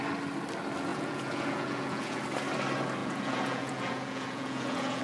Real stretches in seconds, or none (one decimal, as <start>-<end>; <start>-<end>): 0.0-0.9; 2.2-3.0